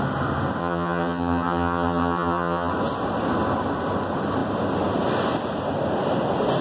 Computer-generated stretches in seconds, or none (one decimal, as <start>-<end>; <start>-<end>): 0.6-2.7